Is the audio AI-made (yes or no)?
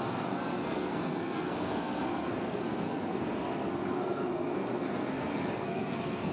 yes